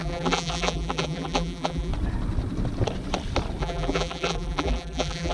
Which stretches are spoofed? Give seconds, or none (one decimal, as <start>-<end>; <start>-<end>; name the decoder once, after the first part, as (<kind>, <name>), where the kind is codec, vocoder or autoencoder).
0.0-1.9 (vocoder, BigVGAN v2); 3.6-5.3